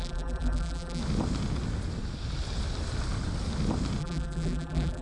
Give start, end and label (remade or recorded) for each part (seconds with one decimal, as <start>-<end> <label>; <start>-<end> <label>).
0.0-1.0 remade; 1.0-4.0 recorded; 4.0-5.0 remade